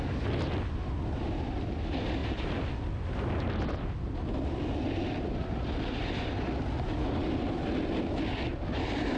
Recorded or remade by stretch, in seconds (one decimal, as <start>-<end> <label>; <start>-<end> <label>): 0.0-9.2 recorded